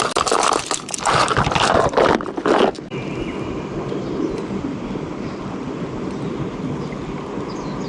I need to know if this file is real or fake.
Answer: real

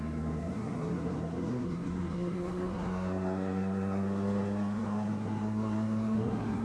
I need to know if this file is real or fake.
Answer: fake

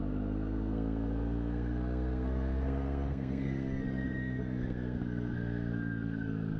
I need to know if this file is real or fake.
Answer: fake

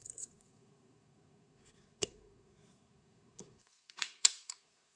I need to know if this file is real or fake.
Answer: fake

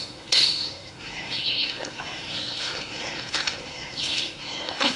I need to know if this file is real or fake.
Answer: fake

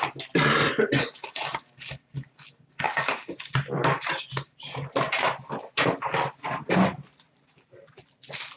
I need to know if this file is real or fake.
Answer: real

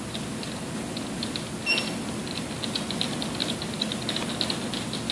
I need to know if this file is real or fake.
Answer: real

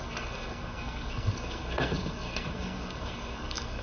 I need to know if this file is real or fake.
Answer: fake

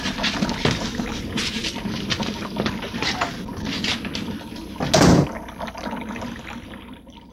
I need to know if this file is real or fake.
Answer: real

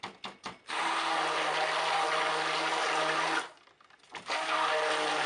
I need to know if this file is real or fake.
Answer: real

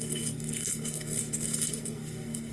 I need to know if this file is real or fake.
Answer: fake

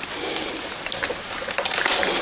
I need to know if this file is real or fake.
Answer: real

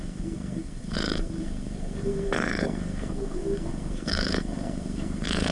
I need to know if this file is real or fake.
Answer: fake